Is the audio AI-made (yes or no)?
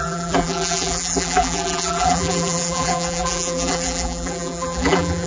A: yes